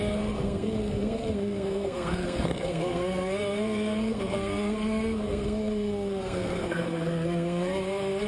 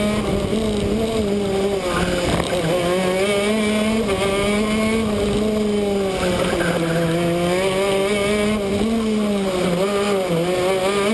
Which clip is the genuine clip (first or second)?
second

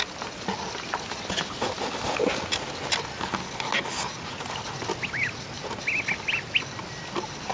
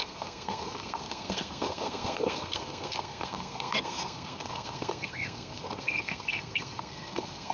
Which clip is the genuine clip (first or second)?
first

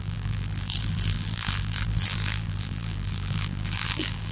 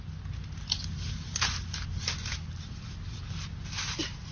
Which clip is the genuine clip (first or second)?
second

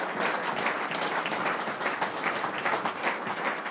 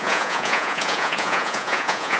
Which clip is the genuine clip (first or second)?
first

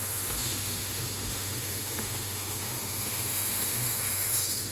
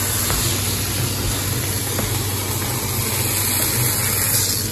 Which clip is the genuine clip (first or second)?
second